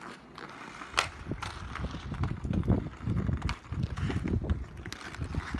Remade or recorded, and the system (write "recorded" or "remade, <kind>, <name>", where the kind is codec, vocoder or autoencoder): recorded